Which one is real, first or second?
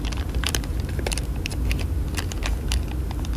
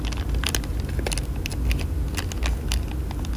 second